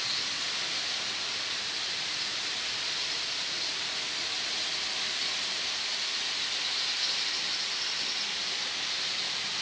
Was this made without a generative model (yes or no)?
no